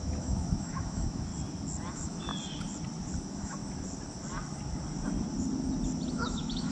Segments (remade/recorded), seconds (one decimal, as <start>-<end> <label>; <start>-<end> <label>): 0.0-1.3 remade; 1.3-1.9 recorded; 1.9-2.3 remade; 2.3-3.2 recorded; 3.2-3.6 remade; 3.6-6.1 recorded; 6.1-6.7 remade